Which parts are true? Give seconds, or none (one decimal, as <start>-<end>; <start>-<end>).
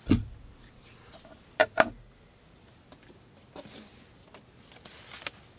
0.0-5.6